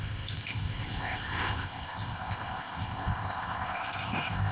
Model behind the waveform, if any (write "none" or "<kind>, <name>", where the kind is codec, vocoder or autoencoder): codec, ZipCodec